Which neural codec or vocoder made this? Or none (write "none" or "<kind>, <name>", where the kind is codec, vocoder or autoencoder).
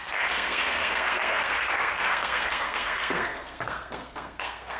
codec, SNAC